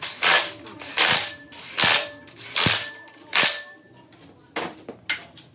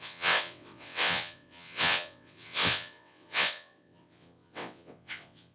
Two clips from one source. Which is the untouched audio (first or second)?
first